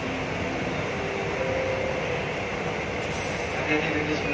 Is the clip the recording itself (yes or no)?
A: yes